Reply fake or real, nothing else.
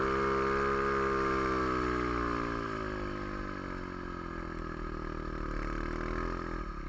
real